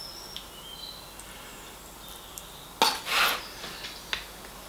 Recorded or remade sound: recorded